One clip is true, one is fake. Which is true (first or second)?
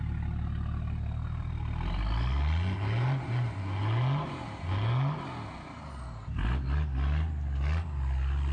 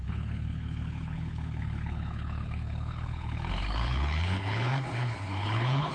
first